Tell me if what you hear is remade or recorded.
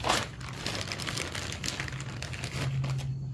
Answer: recorded